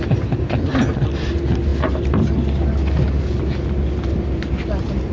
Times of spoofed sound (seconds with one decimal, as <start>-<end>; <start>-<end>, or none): none